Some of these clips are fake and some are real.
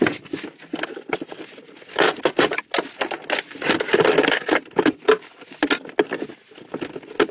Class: real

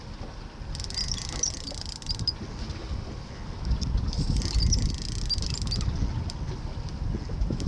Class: real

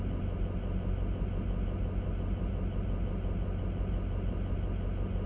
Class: real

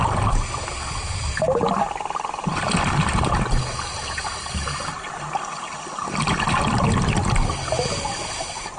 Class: real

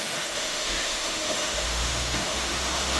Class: fake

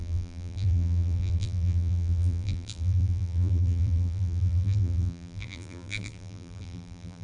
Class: fake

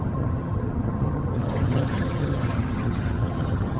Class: fake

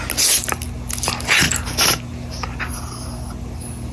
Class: real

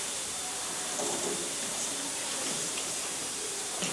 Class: fake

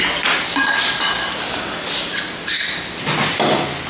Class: real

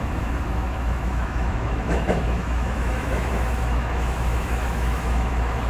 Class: fake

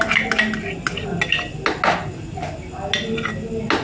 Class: real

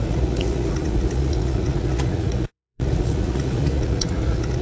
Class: fake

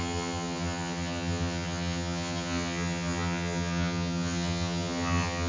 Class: fake